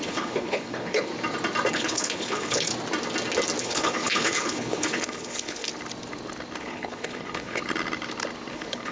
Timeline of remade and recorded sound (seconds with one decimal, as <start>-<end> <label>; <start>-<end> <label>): 0.0-1.1 remade; 1.1-1.7 recorded; 1.7-2.7 remade; 2.7-3.6 recorded; 3.6-5.7 remade; 5.7-6.6 recorded; 6.6-7.6 remade; 7.6-8.5 recorded; 8.5-8.9 remade